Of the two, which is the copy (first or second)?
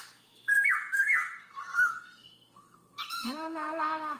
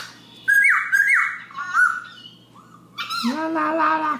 first